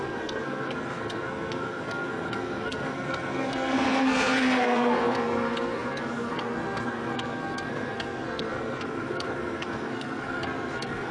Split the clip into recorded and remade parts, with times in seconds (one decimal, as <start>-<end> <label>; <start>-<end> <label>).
0.0-11.1 remade